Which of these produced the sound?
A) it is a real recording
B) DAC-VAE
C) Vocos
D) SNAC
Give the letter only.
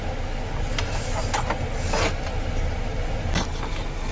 A